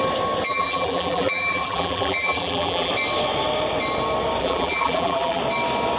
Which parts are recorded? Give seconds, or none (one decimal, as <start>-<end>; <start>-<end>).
0.0-0.5; 2.9-4.4; 5.4-6.0